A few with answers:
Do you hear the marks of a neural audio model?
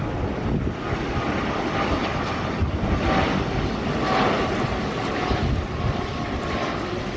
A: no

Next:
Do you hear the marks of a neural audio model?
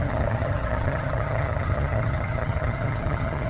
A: yes